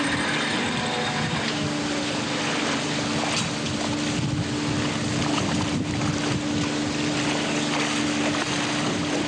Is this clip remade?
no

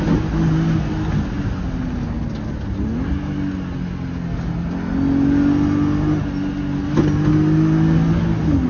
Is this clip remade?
no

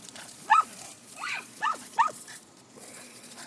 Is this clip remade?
yes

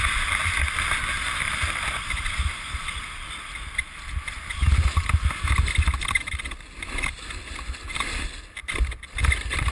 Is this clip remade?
no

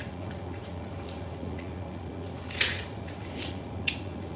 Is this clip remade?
yes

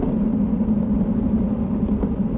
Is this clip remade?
no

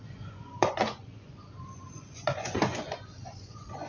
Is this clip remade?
yes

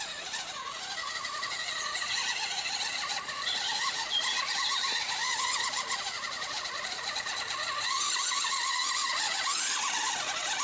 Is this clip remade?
yes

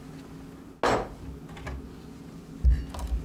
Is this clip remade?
no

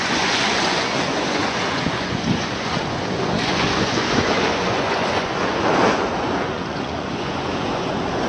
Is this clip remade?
yes